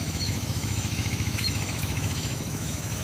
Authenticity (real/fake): fake